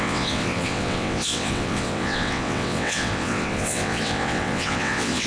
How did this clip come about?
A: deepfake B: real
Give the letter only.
A